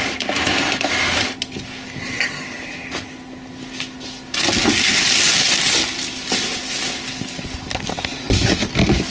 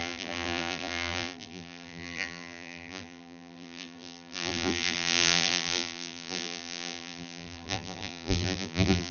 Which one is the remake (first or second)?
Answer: second